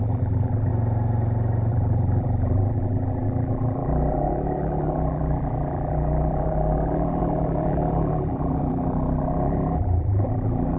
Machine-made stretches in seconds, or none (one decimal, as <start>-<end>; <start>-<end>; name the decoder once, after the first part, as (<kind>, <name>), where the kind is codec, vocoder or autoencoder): 0.0-0.7 (vocoder, BigVGAN v2); 1.7-10.8